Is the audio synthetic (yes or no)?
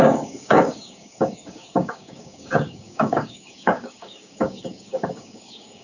yes